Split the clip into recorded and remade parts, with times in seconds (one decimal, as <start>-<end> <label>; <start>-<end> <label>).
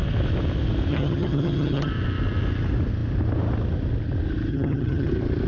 0.0-0.9 recorded; 0.9-1.9 remade; 1.9-4.5 recorded; 4.5-5.1 remade; 5.1-5.5 recorded